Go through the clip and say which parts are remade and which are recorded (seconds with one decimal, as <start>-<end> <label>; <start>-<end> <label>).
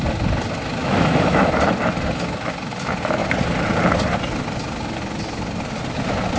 0.0-0.8 recorded; 0.8-1.5 remade; 1.5-6.4 recorded